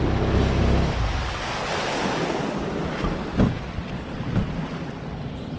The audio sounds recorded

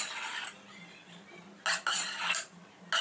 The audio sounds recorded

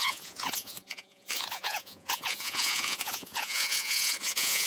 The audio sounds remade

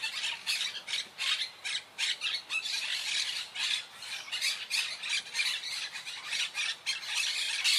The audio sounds recorded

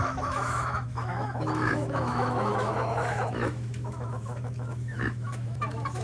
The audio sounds remade